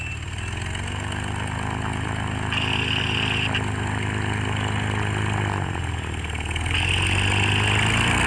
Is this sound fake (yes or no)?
no